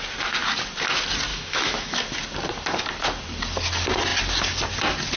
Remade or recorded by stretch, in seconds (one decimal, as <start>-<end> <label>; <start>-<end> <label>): 0.0-1.3 recorded; 1.3-2.0 remade; 2.0-5.2 recorded